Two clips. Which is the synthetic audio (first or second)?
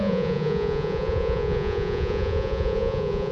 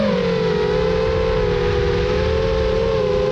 first